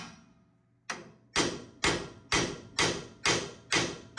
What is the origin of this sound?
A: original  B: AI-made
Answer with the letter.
A